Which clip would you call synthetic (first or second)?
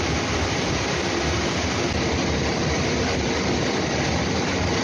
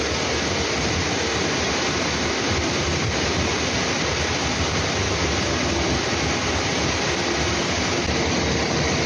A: first